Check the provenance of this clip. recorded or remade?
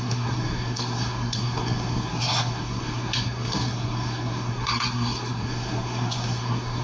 remade